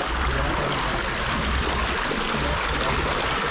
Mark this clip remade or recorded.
recorded